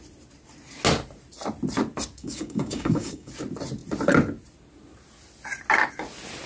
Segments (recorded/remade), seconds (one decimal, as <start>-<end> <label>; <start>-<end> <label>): 0.0-2.2 recorded; 2.2-3.3 remade; 3.3-6.5 recorded